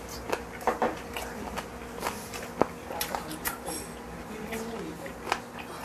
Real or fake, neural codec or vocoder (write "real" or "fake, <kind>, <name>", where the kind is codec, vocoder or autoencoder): real